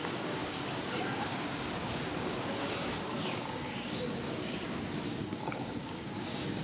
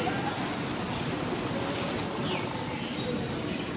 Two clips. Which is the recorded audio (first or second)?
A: second